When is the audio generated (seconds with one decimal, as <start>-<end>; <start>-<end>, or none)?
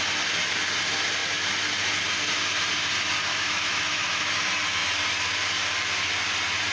3.3-4.3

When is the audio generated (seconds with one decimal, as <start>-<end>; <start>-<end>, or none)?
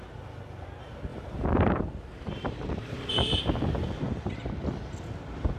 1.1-4.5